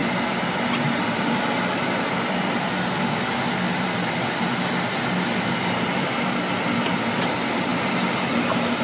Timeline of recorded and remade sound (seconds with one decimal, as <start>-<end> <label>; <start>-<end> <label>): 0.0-8.8 recorded